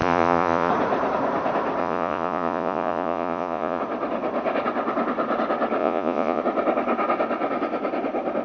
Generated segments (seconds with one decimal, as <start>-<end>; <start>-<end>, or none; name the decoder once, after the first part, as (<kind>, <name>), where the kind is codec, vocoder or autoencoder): 0.0-0.7 (vocoder, Vocos); 1.8-3.8; 5.8-6.4